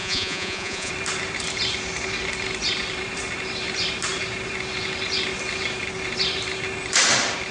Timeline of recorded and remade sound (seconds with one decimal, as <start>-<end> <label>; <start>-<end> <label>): 0.0-0.9 remade; 0.9-7.5 recorded